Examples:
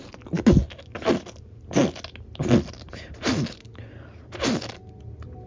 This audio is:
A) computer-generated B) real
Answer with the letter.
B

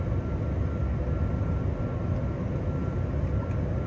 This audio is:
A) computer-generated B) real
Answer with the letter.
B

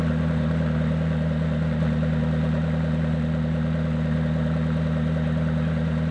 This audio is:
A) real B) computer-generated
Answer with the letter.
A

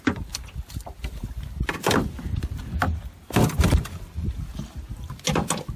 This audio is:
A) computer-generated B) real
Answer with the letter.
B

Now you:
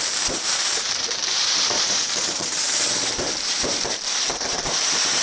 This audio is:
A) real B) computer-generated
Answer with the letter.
B